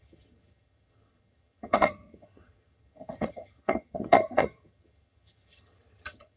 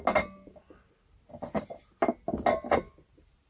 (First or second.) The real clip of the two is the second